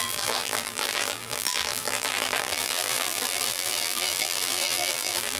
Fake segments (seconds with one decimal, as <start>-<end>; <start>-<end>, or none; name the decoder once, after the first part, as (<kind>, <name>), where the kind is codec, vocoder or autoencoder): 0.0-5.4 (vocoder, BigVGAN v2)